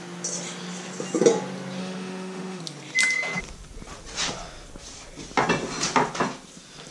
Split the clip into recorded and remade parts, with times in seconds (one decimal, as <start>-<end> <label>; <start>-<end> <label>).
0.0-1.8 recorded; 1.8-2.6 remade; 2.6-6.9 recorded